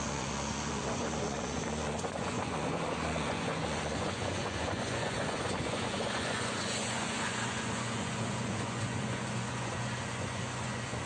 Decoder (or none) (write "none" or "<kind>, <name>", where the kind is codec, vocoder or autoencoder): vocoder, Vocos